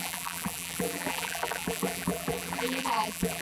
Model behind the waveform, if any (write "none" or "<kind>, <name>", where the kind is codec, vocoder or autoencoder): vocoder, BigVGAN v2